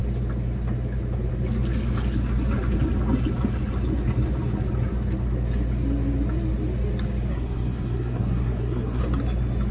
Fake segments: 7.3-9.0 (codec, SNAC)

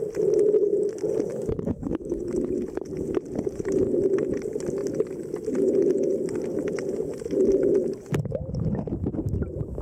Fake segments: 1.3-2.3 (codec, DAC)

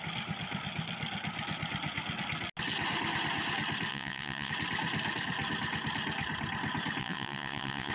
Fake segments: 3.9-4.5 (vocoder, WaveNeXt); 7.0-7.9

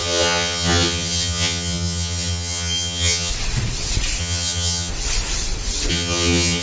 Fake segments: 0.0-3.3 (vocoder, HiFi-GAN); 4.2-4.9; 5.9-6.6